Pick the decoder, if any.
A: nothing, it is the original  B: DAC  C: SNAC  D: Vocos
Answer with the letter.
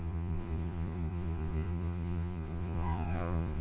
D